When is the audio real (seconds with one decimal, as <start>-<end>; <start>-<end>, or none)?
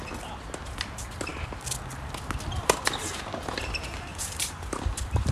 0.0-4.1